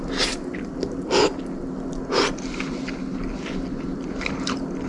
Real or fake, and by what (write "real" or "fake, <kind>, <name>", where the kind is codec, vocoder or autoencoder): real